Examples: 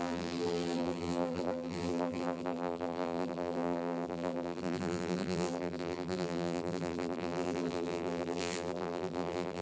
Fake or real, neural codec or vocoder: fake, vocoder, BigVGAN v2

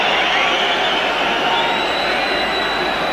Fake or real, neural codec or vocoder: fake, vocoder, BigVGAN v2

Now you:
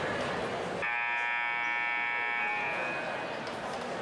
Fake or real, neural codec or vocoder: real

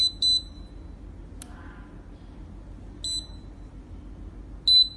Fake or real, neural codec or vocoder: real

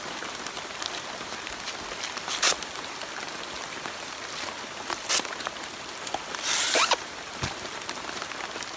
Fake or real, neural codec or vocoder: fake, vocoder, BigVGAN v2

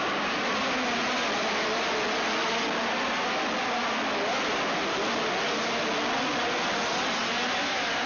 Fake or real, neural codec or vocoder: real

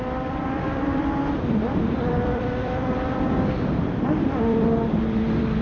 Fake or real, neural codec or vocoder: fake, vocoder, BigVGAN v2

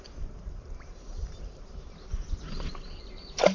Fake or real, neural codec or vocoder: fake, vocoder, BigVGAN v2